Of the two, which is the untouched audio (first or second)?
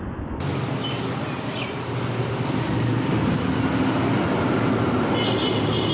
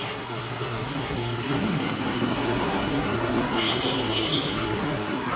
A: first